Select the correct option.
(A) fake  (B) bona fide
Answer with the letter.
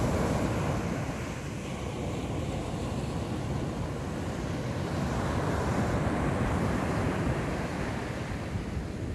B